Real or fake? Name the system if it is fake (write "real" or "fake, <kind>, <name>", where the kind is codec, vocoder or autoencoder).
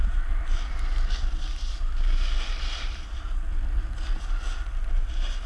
real